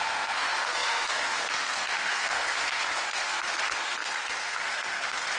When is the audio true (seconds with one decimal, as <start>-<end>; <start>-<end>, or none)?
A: none